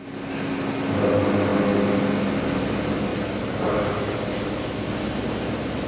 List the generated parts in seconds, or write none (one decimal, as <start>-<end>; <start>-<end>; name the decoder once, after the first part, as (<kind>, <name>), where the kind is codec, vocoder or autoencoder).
3.1-4.2 (vocoder, BigVGAN v2); 5.2-5.9